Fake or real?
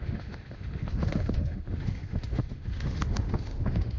fake